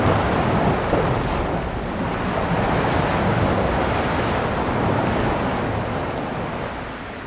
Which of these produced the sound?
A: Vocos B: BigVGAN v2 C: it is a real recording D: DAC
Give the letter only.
C